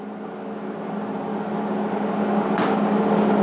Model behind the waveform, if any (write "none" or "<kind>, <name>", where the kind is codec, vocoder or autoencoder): none